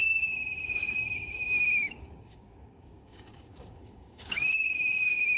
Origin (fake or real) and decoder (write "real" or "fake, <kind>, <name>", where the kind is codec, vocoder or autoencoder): fake, codec, DAC